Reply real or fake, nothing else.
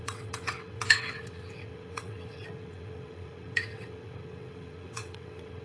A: fake